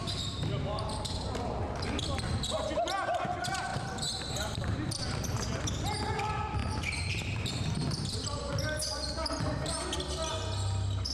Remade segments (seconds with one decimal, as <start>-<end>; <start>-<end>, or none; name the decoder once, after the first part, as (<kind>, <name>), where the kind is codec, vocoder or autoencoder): 0.0-0.5 (vocoder, BigVGAN v2); 3.7-4.9; 6.6-8.5

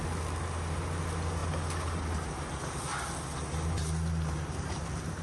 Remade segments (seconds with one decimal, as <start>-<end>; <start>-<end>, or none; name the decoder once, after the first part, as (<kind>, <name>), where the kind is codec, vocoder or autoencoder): none

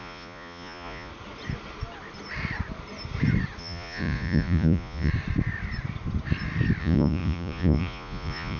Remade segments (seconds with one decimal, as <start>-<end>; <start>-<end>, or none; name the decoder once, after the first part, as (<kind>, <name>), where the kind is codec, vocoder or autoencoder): 0.0-1.1 (vocoder, Vocos); 3.6-5.1; 6.8-8.6